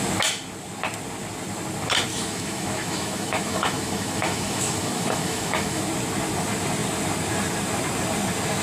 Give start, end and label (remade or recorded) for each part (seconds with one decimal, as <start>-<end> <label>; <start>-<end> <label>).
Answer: 0.0-2.1 recorded; 2.1-5.8 remade; 5.8-8.6 recorded